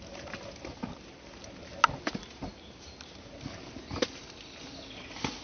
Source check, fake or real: real